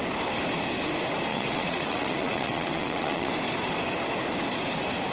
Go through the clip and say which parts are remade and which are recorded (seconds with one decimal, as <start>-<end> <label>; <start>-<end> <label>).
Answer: 0.0-1.3 recorded; 1.3-3.3 remade; 3.3-5.1 recorded

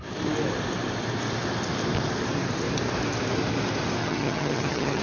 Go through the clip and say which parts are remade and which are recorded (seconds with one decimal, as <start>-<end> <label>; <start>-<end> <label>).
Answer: 0.0-4.0 recorded; 4.0-5.0 remade

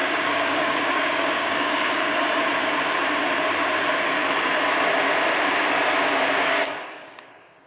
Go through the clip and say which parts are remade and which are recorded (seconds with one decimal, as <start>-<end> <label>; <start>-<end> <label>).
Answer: 0.0-2.1 remade; 2.1-6.4 recorded; 6.4-7.7 remade

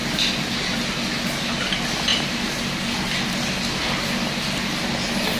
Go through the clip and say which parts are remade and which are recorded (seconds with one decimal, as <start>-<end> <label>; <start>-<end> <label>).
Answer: 0.0-5.4 recorded

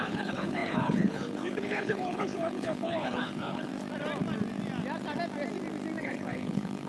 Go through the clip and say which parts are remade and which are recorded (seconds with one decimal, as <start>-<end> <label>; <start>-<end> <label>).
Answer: 0.0-3.7 remade; 3.7-6.0 recorded; 6.0-6.9 remade

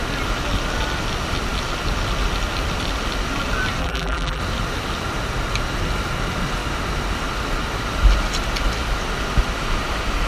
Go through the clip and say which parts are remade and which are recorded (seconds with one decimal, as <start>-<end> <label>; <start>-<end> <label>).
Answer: 0.0-3.8 recorded; 3.8-4.4 remade; 4.4-10.3 recorded